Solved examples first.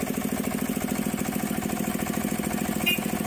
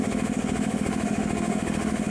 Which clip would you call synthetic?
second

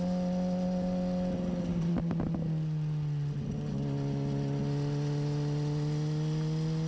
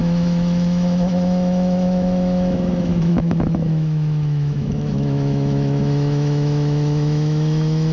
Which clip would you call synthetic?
second